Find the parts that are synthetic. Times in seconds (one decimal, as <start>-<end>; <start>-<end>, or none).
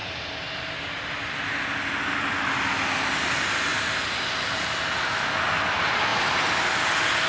none